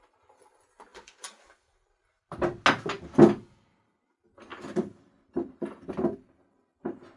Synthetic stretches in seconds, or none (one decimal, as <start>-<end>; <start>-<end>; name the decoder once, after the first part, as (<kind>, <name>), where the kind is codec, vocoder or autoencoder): 0.9-2.6 (vocoder, BigVGAN v2); 4.5-5.9